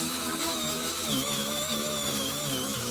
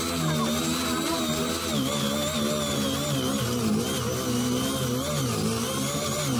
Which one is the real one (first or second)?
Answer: second